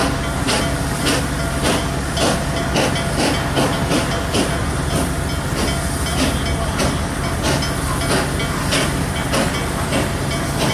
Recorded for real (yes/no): yes